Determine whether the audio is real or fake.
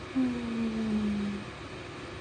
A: real